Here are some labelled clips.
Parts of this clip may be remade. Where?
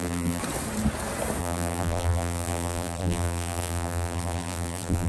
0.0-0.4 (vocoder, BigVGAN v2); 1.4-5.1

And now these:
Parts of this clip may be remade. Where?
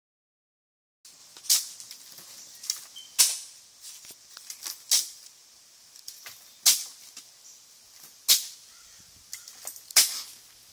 none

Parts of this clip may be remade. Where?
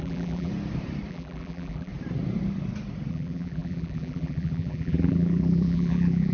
0.0-0.5 (vocoder, BigVGAN v2); 1.1-1.9; 3.1-6.3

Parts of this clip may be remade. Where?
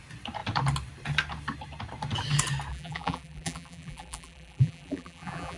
2.7-5.6 (vocoder, BigVGAN v2)